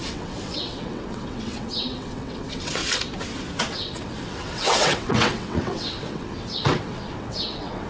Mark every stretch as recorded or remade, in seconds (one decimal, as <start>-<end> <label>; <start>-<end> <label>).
0.0-2.8 remade; 2.8-3.7 recorded; 3.7-7.9 remade